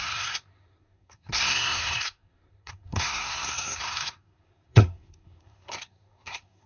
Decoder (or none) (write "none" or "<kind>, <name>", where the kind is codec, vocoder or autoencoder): codec, SNAC